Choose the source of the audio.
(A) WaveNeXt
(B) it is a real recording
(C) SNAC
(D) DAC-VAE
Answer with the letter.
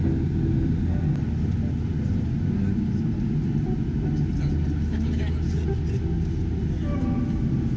B